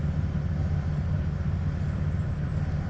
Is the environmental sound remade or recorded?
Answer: recorded